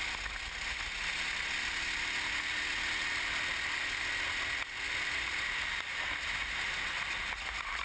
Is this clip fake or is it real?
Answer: real